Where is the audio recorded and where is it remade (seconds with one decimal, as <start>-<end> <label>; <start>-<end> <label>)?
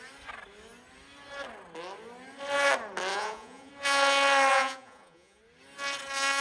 0.0-3.1 recorded; 3.1-3.7 remade; 3.7-4.5 recorded; 4.5-5.4 remade; 5.4-6.4 recorded